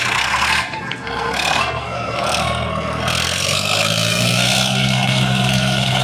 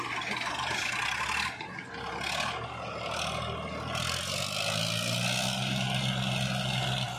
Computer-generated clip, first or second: first